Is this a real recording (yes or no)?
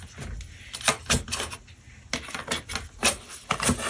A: yes